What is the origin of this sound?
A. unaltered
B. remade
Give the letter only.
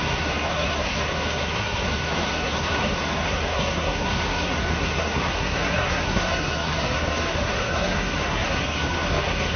B